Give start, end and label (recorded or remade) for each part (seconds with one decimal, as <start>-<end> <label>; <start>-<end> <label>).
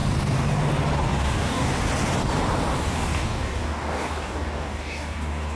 0.0-1.2 recorded; 1.2-1.7 remade; 1.7-2.9 recorded; 2.9-5.6 remade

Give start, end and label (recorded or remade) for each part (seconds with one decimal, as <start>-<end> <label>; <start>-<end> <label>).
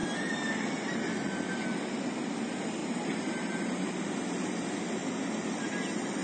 0.0-2.8 recorded; 2.8-3.9 remade; 3.9-6.2 recorded